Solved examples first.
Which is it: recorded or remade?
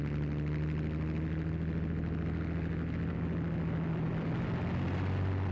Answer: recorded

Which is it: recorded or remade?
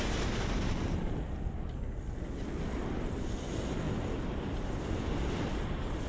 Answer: recorded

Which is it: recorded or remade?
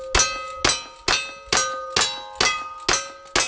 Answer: recorded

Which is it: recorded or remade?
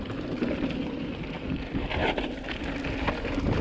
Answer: recorded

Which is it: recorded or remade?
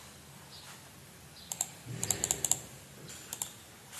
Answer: recorded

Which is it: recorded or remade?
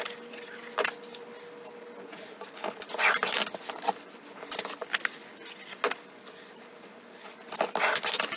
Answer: recorded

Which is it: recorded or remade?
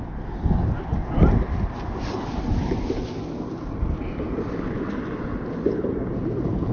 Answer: recorded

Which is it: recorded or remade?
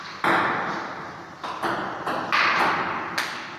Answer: recorded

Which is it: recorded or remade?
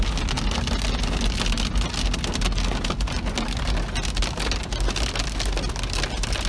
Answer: recorded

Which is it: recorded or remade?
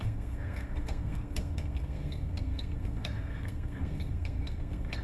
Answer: remade